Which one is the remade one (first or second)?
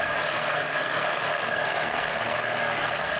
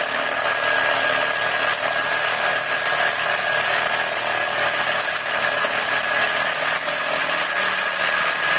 first